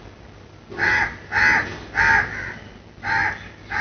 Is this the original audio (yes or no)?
yes